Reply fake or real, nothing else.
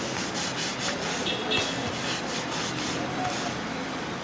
real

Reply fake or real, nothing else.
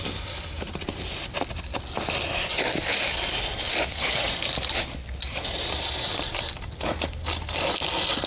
real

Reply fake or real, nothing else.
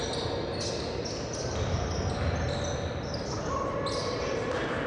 real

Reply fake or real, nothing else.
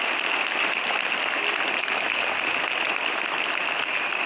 real